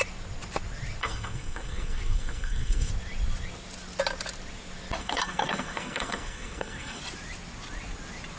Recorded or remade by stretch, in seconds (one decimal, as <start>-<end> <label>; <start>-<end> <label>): 0.0-1.0 recorded; 1.0-2.9 remade; 2.9-5.0 recorded; 5.0-7.0 remade; 7.0-8.4 recorded